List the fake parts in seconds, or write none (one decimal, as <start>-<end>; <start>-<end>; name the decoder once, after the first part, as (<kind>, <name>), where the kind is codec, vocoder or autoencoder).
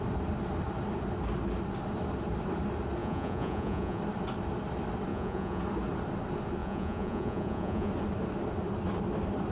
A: 3.0-4.0 (vocoder, Vocos); 5.1-5.6; 6.6-7.9